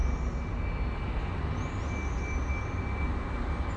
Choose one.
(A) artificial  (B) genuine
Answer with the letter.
B